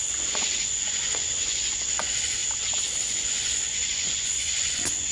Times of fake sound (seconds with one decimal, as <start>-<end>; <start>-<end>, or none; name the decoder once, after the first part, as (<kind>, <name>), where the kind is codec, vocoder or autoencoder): 0.0-2.4 (vocoder, Vocos); 3.0-5.1